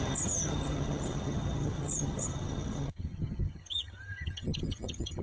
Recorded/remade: remade